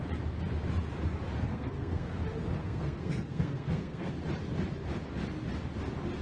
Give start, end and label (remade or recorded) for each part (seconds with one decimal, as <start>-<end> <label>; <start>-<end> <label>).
0.0-1.5 recorded; 1.5-2.1 remade; 2.1-2.6 recorded; 2.6-4.1 remade; 4.1-6.2 recorded